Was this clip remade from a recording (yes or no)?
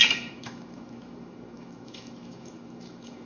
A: yes